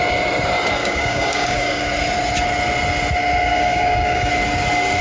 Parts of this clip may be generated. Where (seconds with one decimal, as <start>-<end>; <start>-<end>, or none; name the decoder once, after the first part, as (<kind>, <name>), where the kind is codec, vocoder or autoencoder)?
0.8-1.9 (codec, DAC); 3.5-4.3